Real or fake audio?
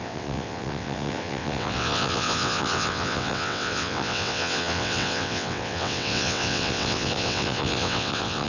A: fake